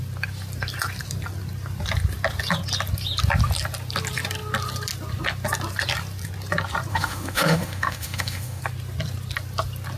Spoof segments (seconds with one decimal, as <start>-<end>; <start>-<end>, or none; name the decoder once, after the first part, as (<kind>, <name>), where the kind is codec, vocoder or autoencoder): 6.9-8.6 (autoencoder, DAC-VAE)